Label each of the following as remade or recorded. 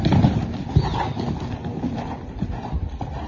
recorded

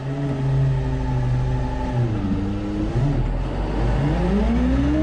recorded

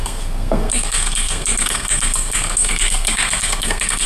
remade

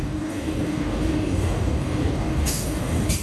remade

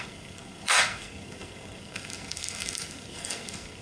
remade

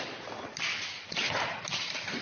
remade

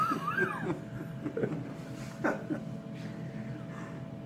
recorded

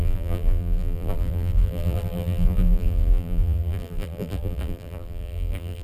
remade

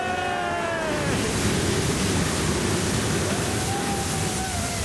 recorded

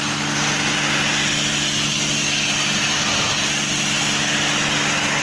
recorded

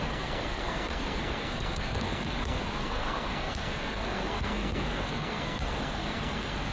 remade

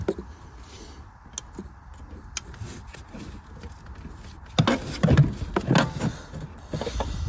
recorded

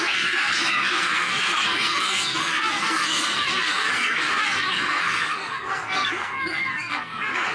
remade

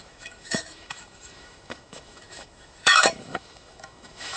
remade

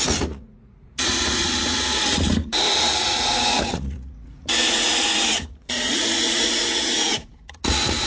remade